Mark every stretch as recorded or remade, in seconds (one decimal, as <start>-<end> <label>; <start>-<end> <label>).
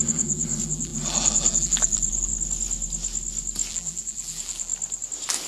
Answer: 0.0-2.3 remade; 2.3-3.7 recorded; 3.7-4.7 remade; 4.7-5.5 recorded